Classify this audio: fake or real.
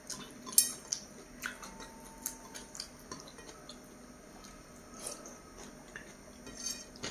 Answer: real